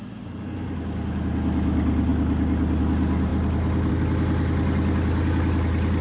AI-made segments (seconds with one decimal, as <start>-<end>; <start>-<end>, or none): none